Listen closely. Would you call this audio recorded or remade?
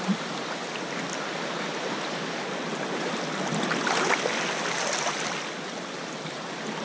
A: recorded